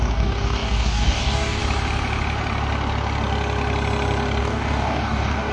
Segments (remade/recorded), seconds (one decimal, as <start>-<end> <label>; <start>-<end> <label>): 0.0-1.6 remade; 1.6-4.4 recorded; 4.4-5.5 remade